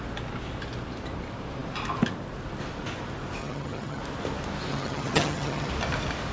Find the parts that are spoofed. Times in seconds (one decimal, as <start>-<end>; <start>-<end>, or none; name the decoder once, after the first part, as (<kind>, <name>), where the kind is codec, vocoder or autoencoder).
3.4-4.0 (vocoder, HiFi-GAN); 4.7-5.7